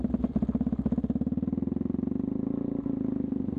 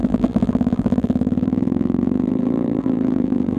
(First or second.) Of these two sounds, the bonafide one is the first